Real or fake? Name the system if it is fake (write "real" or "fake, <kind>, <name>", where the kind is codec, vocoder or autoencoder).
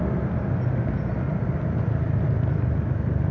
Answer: real